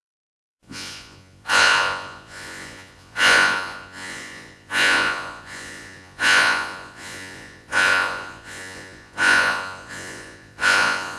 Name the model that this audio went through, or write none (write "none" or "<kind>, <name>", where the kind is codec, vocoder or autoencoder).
vocoder, Vocos